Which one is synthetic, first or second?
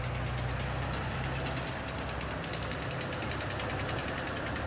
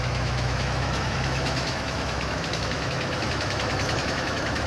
second